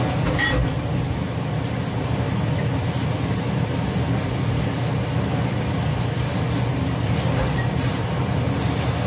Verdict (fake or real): real